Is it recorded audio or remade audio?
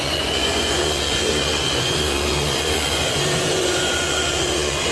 remade